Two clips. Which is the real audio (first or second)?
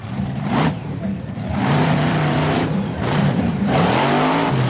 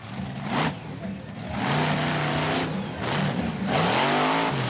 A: second